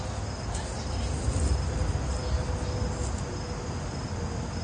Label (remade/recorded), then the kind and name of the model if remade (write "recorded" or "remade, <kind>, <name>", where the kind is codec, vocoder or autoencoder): recorded